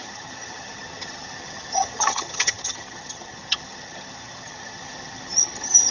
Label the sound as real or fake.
fake